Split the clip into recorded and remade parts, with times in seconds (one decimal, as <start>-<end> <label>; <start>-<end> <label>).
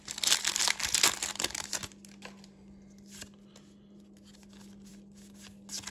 0.0-5.9 recorded